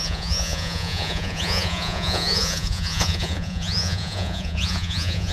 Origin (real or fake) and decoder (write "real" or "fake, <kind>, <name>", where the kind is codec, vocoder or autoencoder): fake, vocoder, Vocos